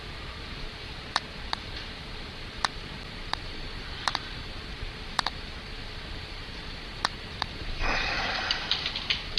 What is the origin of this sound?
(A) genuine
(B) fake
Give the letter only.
A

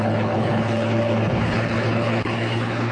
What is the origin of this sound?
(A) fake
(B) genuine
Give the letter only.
A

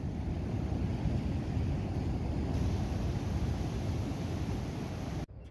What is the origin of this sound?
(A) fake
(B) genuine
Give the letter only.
B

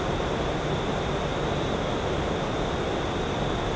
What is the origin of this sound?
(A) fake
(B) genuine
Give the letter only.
B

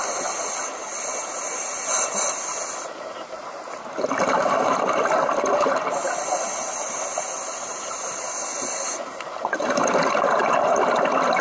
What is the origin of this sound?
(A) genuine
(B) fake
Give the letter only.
A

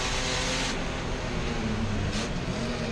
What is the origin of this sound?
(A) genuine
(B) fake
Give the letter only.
A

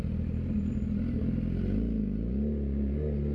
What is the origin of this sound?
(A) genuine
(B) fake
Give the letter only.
A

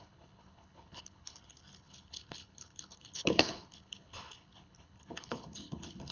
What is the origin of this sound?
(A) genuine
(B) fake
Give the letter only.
B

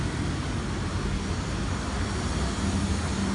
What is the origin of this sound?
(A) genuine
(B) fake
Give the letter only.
A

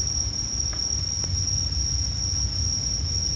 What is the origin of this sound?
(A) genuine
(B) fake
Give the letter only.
A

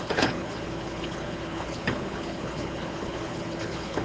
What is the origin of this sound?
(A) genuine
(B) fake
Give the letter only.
B